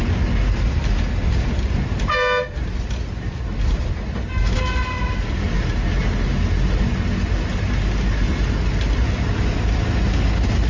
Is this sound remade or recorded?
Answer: recorded